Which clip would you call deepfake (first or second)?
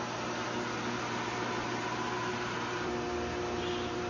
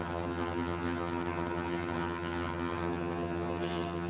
second